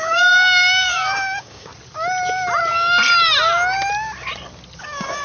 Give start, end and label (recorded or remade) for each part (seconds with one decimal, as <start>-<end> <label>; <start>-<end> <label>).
0.0-1.7 remade; 1.7-4.8 recorded; 4.8-5.2 remade